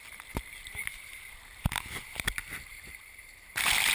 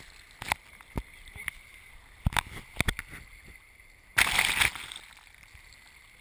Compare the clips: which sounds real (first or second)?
second